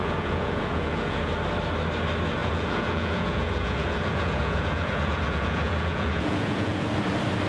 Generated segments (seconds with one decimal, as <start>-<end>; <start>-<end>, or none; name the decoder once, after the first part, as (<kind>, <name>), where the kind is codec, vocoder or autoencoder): 0.0-1.3 (vocoder, Vocos); 2.4-6.9